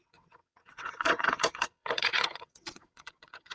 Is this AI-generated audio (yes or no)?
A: yes